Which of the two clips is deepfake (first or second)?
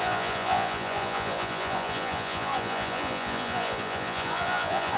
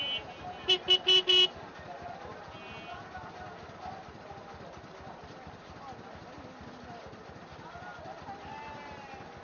first